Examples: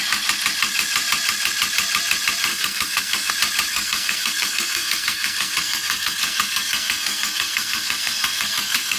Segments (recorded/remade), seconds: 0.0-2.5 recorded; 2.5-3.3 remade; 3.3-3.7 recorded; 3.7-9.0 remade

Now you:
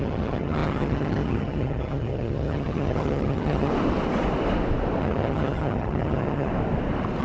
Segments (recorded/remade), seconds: 0.0-3.7 remade; 3.7-5.0 recorded; 5.0-6.5 remade; 6.5-7.2 recorded

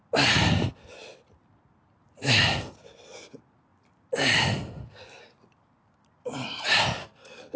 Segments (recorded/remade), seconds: 0.0-7.0 recorded; 7.0-7.6 remade

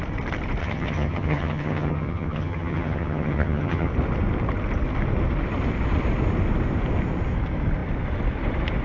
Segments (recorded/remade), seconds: 0.0-0.6 recorded; 0.6-3.9 remade; 3.9-8.8 recorded

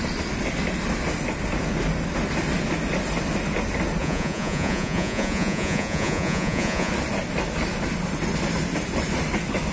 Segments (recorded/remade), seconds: 0.0-4.0 recorded; 4.0-6.9 remade; 6.9-9.7 recorded

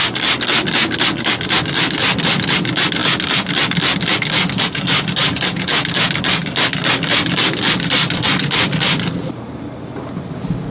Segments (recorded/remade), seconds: 0.0-10.7 recorded